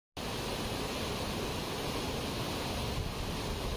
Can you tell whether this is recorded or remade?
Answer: recorded